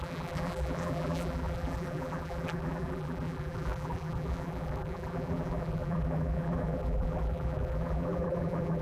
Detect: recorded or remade remade